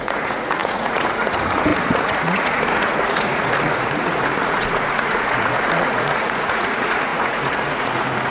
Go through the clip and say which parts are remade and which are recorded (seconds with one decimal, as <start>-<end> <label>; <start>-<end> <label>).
0.0-8.3 remade